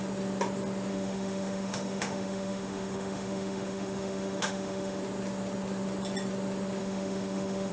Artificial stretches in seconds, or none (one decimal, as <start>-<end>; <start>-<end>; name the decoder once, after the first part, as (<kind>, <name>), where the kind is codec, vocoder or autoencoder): 0.9-5.0 (autoencoder, DAC-VAE); 6.8-7.7